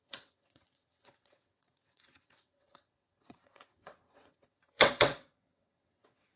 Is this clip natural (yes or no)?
no